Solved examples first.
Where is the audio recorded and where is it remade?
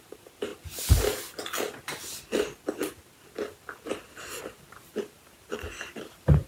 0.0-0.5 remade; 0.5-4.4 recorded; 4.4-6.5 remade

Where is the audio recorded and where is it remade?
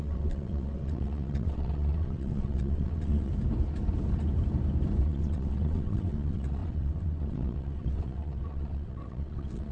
0.0-3.3 remade; 3.3-5.0 recorded; 5.0-9.7 remade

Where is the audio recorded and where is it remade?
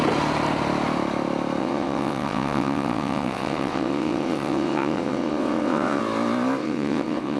0.0-1.6 recorded; 1.6-6.0 remade; 6.0-6.6 recorded; 6.6-7.4 remade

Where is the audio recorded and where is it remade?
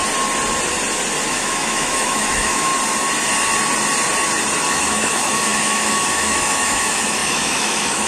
0.0-1.3 recorded; 1.3-2.7 remade; 2.7-4.7 recorded; 4.7-8.1 remade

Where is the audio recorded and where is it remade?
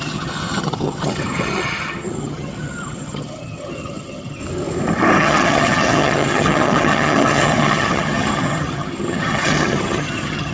0.0-4.4 remade; 4.4-5.2 recorded; 5.2-10.5 remade